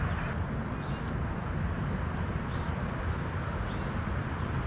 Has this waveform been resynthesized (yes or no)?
no